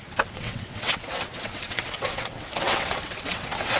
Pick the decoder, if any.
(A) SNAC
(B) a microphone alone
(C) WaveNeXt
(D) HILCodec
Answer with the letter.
C